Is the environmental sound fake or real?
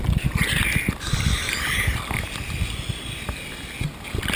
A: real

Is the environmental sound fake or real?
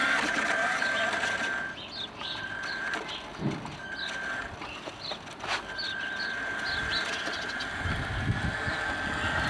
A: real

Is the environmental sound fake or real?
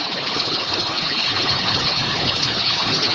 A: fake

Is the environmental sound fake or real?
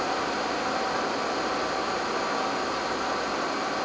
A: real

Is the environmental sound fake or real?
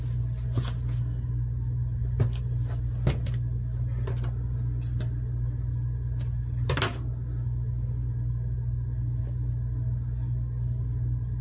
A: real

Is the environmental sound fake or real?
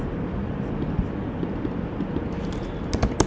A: real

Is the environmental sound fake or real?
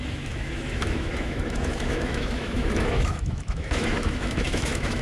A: fake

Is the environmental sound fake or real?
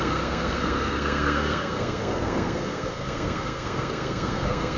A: fake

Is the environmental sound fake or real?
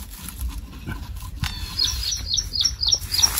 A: real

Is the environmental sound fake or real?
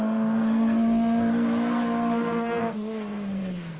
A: fake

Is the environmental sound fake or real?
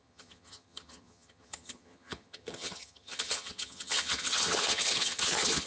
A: fake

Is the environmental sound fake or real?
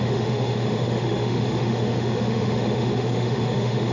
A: fake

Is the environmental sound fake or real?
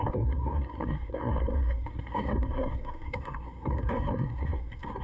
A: fake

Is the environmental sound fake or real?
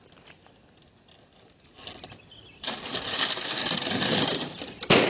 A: real